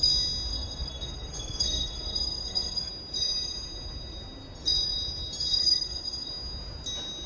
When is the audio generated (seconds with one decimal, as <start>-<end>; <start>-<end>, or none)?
0.5-2.9; 5.6-6.3